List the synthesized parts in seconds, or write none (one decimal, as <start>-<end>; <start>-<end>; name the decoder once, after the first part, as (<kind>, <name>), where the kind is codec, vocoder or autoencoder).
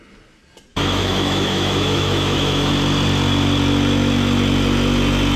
0.7-2.7 (autoencoder, DAC-VAE)